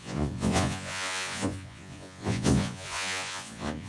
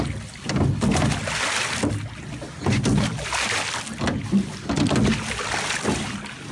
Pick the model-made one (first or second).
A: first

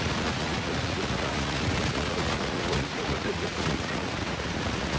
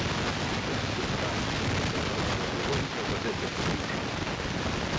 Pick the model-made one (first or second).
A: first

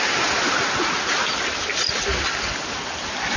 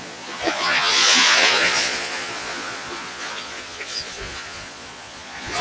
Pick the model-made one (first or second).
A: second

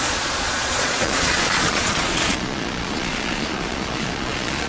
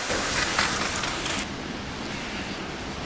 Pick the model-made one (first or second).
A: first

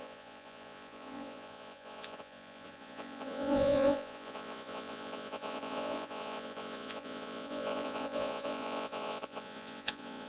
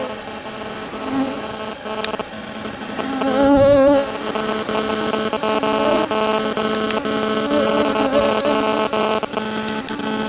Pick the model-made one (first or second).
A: first